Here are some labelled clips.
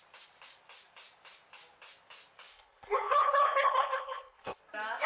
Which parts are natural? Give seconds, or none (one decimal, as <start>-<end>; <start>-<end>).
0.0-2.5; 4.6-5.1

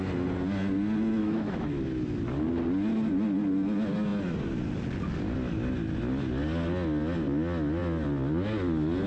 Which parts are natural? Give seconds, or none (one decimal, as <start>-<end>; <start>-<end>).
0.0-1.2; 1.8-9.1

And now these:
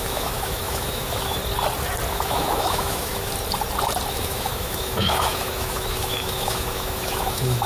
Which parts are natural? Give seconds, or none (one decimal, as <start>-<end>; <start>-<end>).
1.4-2.1; 3.3-4.1

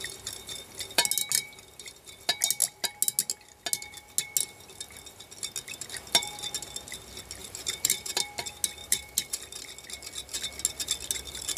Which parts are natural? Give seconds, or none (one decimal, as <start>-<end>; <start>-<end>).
0.0-7.4; 8.2-8.8; 9.4-11.6

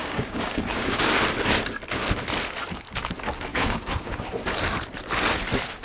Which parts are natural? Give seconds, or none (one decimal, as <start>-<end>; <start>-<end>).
1.0-3.5; 4.3-5.8

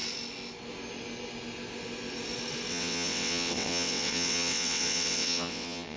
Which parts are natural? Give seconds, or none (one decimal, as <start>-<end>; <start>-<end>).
0.0-2.7

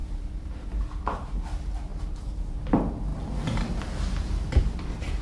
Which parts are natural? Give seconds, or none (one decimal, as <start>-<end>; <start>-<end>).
0.7-1.9; 2.7-5.2